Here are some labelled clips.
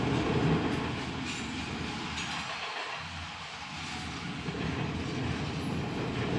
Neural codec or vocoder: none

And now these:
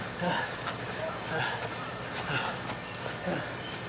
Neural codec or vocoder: none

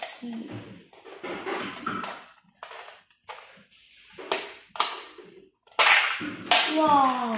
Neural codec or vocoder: none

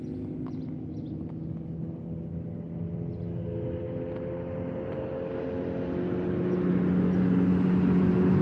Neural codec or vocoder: none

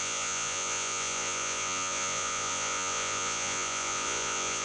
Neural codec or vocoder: vocoder, Vocos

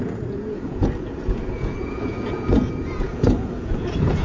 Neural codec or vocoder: vocoder, Vocos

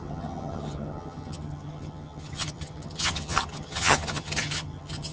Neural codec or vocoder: vocoder, HiFi-GAN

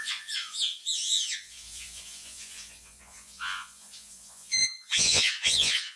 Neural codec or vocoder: vocoder, Vocos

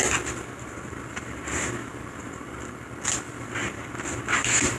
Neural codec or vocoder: vocoder, BigVGAN v2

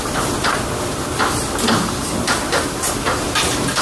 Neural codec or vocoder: vocoder, BigVGAN v2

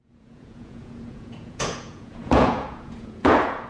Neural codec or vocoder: vocoder, Vocos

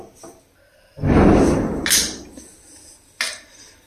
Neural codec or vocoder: none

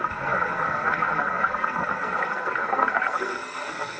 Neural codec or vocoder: codec, SNAC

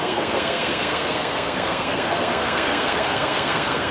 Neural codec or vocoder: codec, SNAC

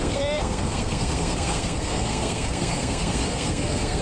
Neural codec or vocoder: codec, SNAC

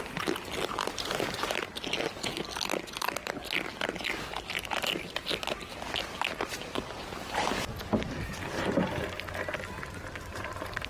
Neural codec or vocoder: none